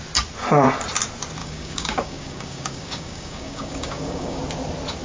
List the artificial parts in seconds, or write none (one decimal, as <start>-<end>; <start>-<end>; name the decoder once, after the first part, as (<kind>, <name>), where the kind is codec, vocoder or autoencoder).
1.4-4.4 (codec, DAC)